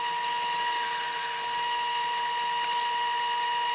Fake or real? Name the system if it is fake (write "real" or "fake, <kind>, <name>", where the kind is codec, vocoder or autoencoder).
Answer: real